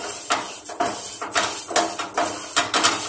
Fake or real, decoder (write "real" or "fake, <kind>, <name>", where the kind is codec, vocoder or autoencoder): real